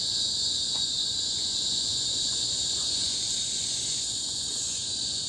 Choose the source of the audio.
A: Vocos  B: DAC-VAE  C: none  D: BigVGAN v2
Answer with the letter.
A